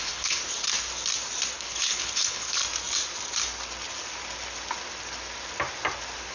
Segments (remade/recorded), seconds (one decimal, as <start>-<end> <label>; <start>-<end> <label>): 0.0-0.4 remade; 0.4-1.6 recorded; 1.6-2.6 remade; 2.6-6.3 recorded